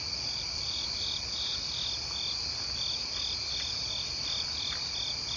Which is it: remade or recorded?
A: recorded